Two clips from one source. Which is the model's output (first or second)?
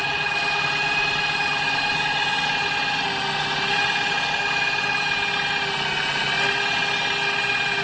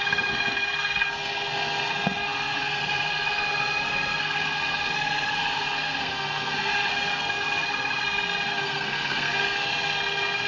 second